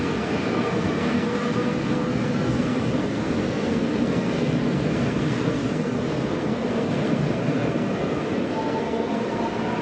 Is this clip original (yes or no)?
no